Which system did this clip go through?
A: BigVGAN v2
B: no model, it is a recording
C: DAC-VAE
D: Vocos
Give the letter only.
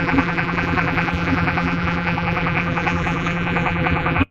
A